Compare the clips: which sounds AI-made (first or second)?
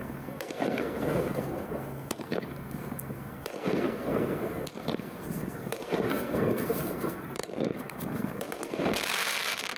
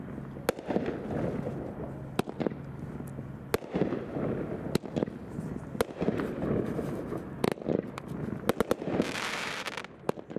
first